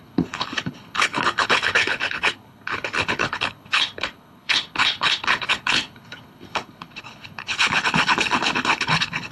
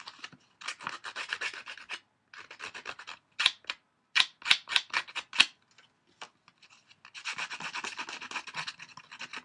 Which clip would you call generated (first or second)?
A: first